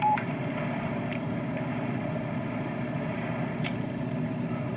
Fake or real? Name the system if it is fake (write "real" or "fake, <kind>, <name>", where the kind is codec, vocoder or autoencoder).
fake, vocoder, BigVGAN v2